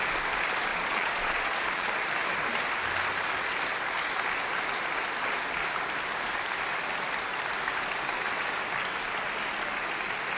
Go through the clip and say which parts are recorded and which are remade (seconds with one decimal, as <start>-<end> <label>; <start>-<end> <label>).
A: 0.0-0.7 recorded; 0.7-1.9 remade; 1.9-10.4 recorded